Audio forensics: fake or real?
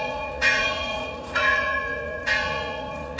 fake